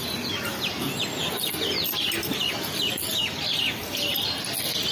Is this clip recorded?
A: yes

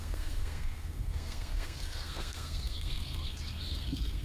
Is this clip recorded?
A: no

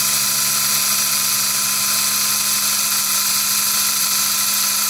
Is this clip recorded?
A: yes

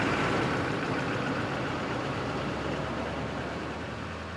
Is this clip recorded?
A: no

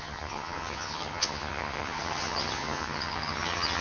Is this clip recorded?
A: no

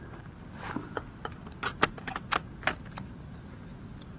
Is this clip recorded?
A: yes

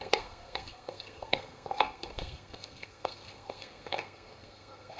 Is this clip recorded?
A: no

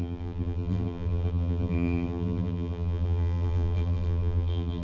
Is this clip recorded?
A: no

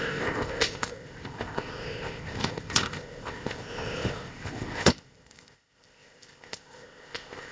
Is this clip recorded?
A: no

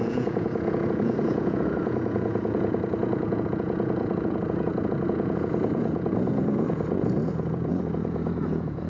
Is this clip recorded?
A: no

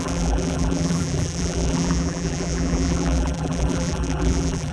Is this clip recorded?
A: no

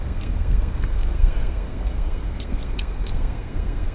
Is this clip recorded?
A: no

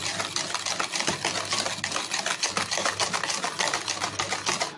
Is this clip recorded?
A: yes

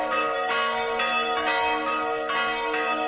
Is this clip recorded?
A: yes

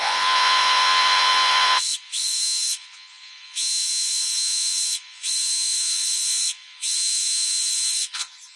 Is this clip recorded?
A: no